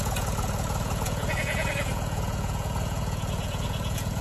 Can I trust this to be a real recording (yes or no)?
no